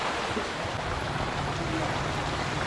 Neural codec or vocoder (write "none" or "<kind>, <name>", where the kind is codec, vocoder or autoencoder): none